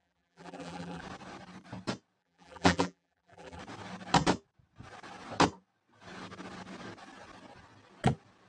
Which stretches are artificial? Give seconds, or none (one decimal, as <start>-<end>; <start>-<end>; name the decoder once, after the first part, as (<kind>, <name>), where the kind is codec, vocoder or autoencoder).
0.0-1.0 (vocoder, BigVGAN v2); 2.2-3.6